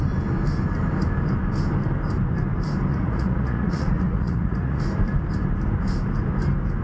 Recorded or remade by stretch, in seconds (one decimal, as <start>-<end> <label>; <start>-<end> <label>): 0.0-2.9 recorded; 2.9-4.8 remade; 4.8-6.8 recorded